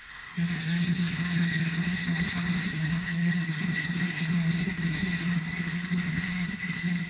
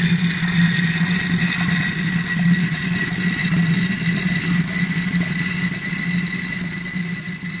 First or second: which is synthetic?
first